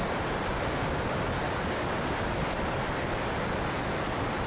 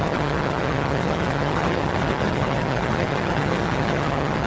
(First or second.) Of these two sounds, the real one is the first